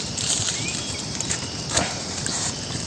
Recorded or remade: remade